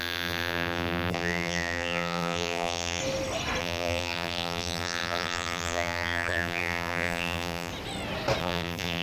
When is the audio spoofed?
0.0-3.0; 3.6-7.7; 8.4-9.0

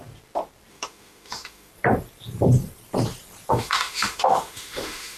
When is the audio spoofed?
0.7-1.7; 3.5-5.2

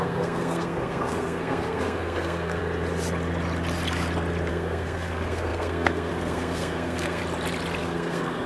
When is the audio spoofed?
0.0-2.6; 4.5-7.2; 7.8-8.5

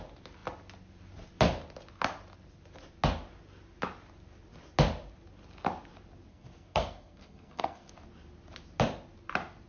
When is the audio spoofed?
6.3-7.9

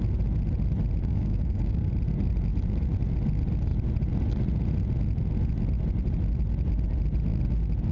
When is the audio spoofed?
1.0-1.9

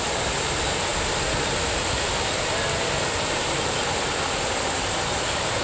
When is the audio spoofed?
none